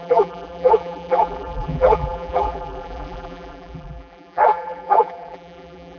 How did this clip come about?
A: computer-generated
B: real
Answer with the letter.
A